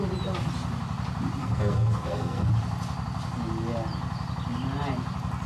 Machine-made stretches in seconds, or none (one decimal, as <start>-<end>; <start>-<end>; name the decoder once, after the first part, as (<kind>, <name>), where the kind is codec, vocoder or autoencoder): 1.4-2.5 (codec, SNAC)